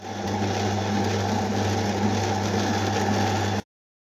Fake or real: real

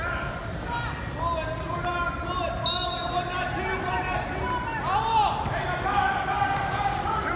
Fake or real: real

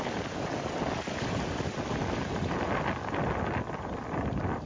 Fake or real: real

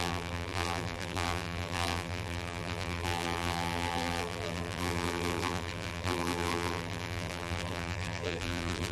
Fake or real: fake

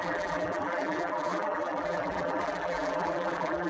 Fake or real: fake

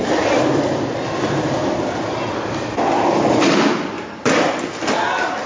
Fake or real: real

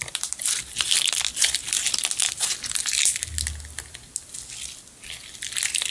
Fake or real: real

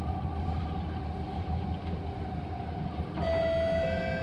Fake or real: real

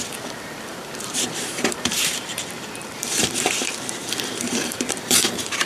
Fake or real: fake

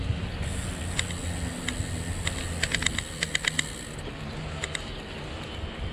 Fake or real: real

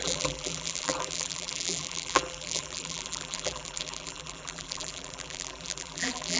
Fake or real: fake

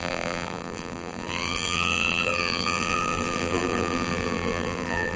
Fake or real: fake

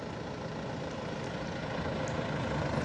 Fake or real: real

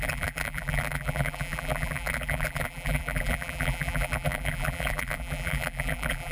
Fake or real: fake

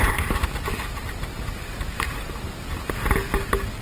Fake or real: real